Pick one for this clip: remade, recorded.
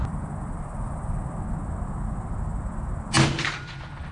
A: recorded